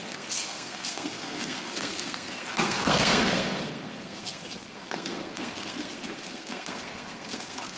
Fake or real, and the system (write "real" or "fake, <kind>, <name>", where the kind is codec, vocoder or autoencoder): fake, codec, SNAC